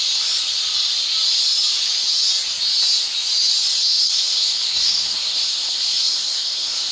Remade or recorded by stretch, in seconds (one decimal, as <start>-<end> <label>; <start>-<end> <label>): 0.0-4.0 recorded; 4.0-6.9 remade